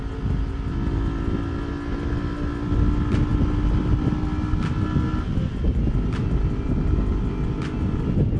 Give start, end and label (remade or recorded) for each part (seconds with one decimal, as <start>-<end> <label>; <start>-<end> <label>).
0.0-8.4 recorded